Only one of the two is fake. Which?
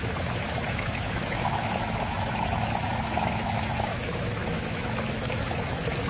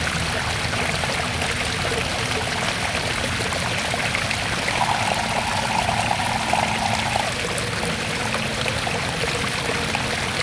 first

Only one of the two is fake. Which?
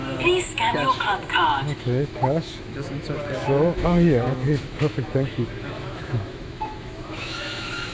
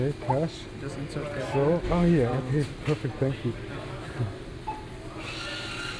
first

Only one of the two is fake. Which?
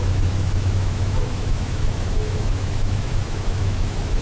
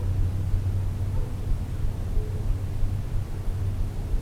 first